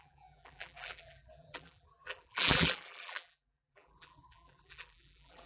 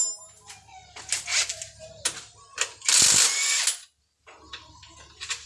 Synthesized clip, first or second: first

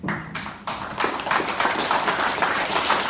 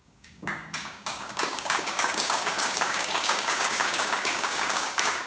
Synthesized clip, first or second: second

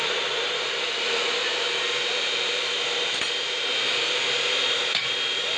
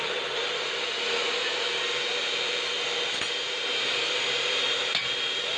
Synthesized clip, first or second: first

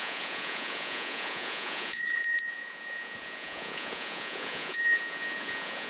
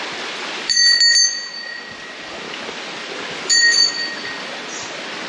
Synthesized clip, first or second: first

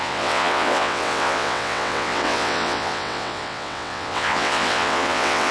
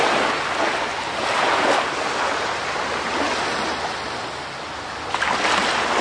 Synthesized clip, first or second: first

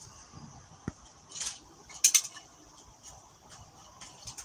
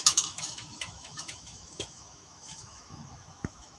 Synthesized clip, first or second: second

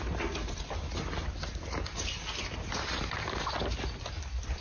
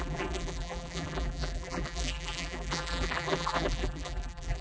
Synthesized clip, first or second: second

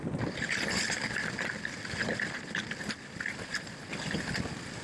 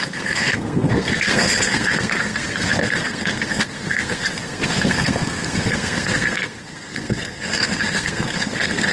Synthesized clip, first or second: second